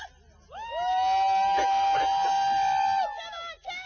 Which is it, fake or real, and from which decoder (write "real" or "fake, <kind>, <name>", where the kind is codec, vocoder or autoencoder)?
real